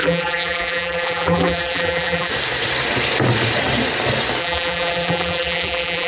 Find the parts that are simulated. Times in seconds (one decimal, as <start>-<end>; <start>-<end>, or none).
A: 0.0-2.3; 4.4-6.1